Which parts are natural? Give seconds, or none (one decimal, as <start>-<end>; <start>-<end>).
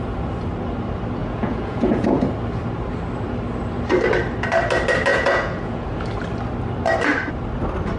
0.0-1.2; 2.2-5.1; 6.0-8.0